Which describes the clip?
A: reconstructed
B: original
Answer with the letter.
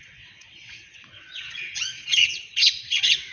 A